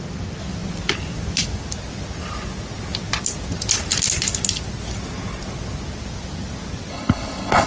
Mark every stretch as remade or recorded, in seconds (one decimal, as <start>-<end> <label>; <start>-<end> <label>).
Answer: 0.0-6.9 recorded; 6.9-7.7 remade